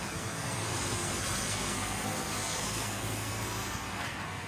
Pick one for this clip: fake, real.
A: fake